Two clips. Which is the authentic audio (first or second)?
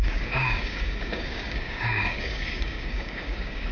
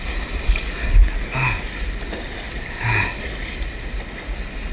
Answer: second